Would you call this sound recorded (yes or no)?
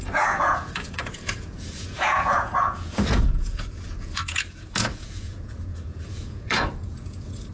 no